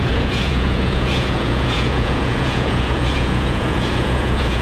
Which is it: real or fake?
fake